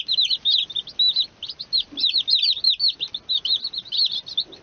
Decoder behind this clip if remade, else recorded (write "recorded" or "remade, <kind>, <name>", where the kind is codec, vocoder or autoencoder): recorded